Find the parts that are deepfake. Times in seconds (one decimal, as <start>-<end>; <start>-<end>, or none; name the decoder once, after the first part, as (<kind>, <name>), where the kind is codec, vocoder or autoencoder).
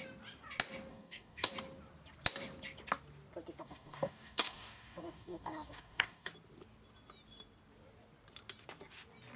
0.9-1.5 (codec, DAC); 3.6-6.3